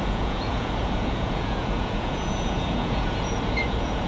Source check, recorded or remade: remade